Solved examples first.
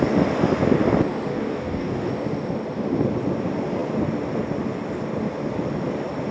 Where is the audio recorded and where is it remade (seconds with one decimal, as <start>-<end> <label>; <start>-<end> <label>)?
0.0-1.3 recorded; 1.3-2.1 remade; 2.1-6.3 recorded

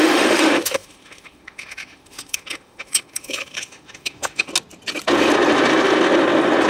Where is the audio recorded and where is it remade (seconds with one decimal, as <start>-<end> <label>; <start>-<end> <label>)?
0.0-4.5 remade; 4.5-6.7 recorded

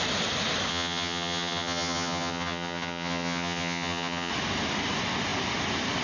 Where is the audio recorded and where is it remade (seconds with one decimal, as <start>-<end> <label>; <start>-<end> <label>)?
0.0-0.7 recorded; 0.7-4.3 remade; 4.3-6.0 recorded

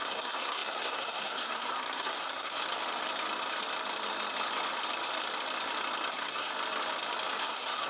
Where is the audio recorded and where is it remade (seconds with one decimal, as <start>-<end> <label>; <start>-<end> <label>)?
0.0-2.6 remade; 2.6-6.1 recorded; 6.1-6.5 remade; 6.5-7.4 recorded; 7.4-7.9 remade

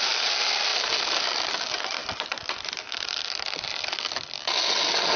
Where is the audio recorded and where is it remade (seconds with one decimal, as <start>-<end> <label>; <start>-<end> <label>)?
0.0-5.2 recorded